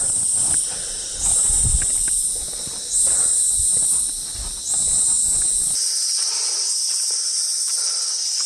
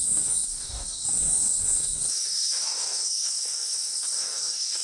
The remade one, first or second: second